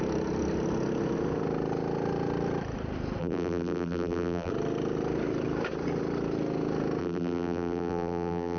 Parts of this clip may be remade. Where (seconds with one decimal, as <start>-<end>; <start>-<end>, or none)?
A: 3.2-4.5; 7.0-8.6